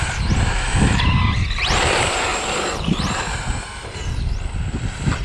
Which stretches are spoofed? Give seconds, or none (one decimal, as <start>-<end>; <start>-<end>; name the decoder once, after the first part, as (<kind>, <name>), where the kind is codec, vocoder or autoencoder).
none